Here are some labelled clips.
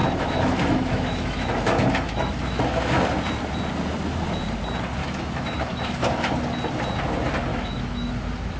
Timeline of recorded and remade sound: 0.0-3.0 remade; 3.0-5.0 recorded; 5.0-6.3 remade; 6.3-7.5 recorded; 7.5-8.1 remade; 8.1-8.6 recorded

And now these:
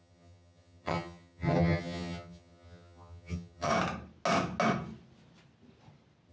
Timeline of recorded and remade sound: 0.0-3.7 remade; 3.7-6.3 recorded

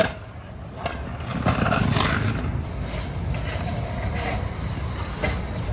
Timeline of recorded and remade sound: 0.0-5.7 recorded

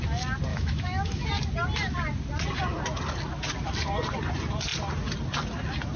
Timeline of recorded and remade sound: 0.0-0.5 recorded; 0.5-1.3 remade; 1.3-6.0 recorded

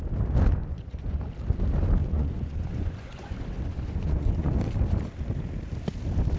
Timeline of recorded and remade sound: 0.0-0.6 recorded; 0.6-1.2 remade; 1.2-2.0 recorded; 2.0-4.5 remade; 4.5-6.4 recorded